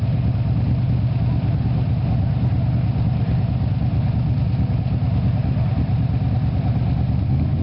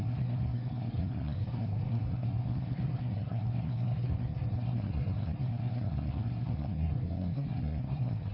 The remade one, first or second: second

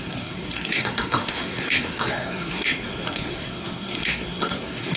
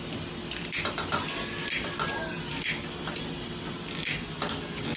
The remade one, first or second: first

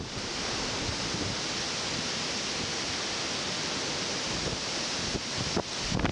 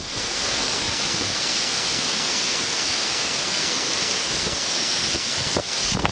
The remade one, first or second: second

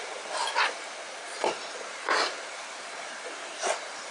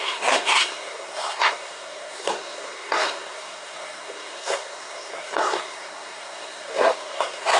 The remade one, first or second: second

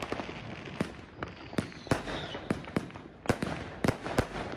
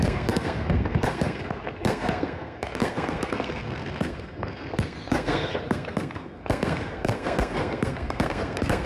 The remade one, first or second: second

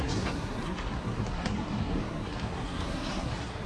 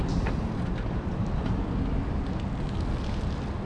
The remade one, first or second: first